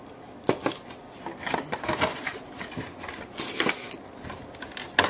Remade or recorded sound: recorded